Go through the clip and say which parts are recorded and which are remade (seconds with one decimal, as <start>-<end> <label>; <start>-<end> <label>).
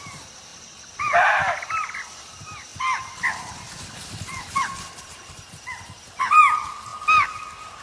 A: 0.0-2.7 recorded; 2.7-5.3 remade; 5.3-7.8 recorded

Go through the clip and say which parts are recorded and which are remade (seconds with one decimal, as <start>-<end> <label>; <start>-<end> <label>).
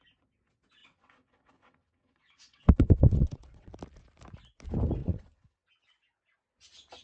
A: 0.0-0.8 recorded; 0.8-3.7 remade; 3.7-5.0 recorded; 5.0-5.7 remade; 5.7-7.0 recorded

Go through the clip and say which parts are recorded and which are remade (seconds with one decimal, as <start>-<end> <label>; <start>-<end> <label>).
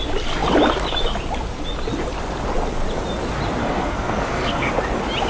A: 0.0-3.6 recorded; 3.6-4.7 remade; 4.7-5.3 recorded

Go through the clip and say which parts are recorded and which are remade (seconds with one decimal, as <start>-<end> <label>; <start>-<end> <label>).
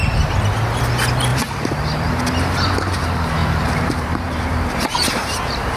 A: 0.0-1.3 recorded; 1.3-2.1 remade; 2.1-3.4 recorded; 3.4-5.8 remade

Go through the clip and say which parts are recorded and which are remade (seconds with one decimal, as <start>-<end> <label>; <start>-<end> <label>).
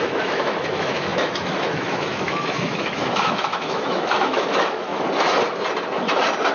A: 0.0-4.9 remade; 4.9-6.5 recorded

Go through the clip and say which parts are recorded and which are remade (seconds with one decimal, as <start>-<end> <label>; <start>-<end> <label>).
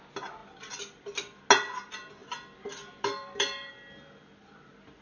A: 0.0-0.4 recorded; 0.4-1.4 remade; 1.4-2.2 recorded; 2.2-3.7 remade; 3.7-5.0 recorded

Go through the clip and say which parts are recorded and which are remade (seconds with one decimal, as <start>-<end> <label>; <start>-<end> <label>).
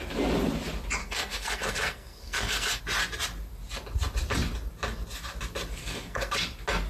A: 0.0-1.0 recorded; 1.0-2.8 remade; 2.8-5.8 recorded; 5.8-6.3 remade; 6.3-6.9 recorded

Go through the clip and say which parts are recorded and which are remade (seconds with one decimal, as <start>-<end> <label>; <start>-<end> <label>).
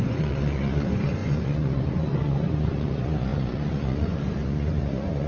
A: 0.0-5.3 remade